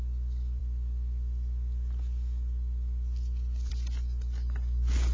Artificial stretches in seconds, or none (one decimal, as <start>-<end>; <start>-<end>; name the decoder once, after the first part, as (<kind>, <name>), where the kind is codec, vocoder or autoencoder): none